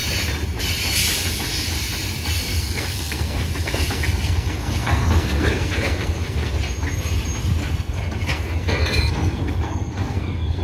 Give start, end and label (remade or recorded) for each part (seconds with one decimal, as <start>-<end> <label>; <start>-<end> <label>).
0.0-2.5 recorded; 2.5-6.5 remade; 6.5-7.6 recorded; 7.6-10.6 remade

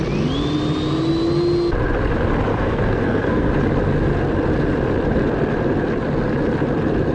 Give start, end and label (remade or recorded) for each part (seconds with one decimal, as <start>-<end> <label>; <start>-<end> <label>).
0.0-2.5 recorded; 2.5-3.5 remade; 3.5-7.1 recorded

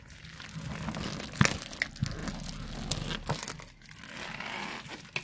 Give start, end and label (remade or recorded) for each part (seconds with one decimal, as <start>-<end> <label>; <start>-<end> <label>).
0.0-5.2 recorded

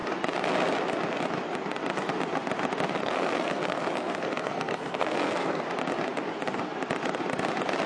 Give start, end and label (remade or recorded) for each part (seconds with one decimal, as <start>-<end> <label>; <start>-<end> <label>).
0.0-3.0 recorded; 3.0-5.6 remade; 5.6-7.9 recorded

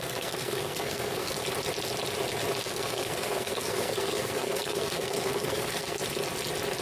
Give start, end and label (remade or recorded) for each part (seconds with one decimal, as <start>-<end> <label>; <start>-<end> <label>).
0.0-1.4 remade; 1.4-2.6 recorded; 2.6-6.0 remade; 6.0-6.8 recorded

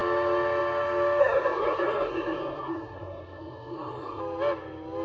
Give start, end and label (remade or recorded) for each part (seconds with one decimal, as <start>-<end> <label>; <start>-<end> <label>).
0.0-1.2 recorded; 1.2-4.2 remade; 4.2-5.0 recorded